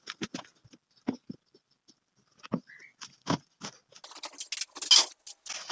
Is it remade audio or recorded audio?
recorded